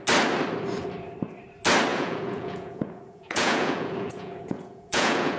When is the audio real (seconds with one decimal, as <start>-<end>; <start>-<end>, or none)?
0.0-1.9